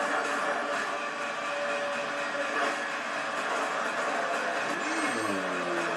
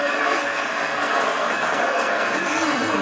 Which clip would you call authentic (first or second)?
first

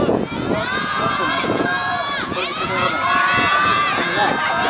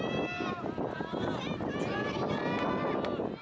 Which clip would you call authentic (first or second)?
second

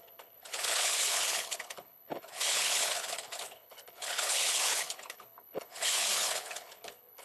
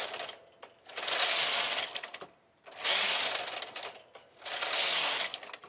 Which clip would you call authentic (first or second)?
second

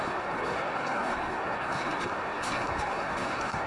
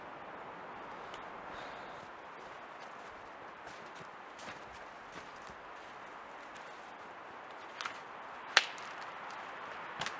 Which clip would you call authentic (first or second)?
second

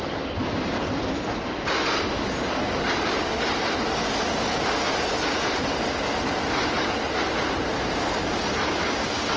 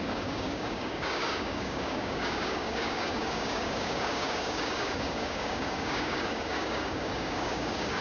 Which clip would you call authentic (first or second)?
first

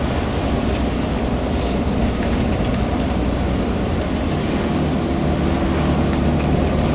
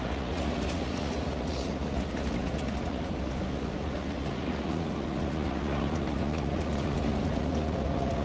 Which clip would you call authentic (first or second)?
first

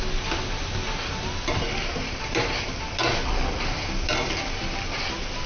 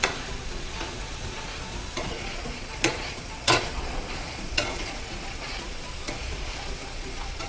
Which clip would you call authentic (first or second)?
first